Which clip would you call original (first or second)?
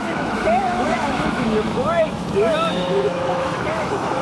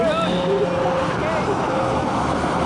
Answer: second